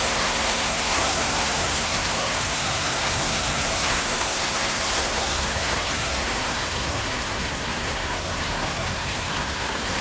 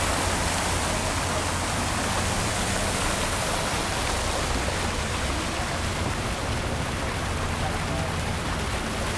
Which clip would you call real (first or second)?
second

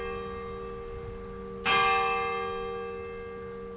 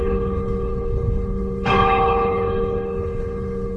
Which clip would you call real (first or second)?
first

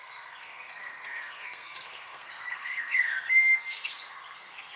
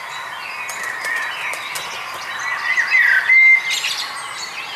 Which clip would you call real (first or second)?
second